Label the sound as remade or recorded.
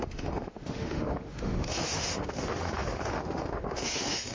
remade